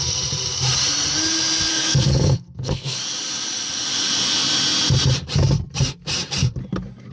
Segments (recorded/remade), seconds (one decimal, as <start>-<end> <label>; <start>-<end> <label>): 0.0-1.7 recorded; 1.7-3.0 remade; 3.0-7.1 recorded